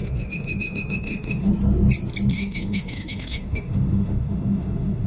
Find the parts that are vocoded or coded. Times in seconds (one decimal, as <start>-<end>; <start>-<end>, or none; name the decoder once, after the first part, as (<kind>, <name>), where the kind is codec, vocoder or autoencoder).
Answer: 0.0-1.5 (autoencoder, DAC-VAE); 2.3-5.1